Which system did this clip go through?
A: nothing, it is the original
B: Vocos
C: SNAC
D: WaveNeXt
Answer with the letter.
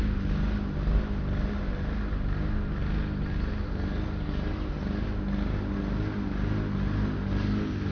A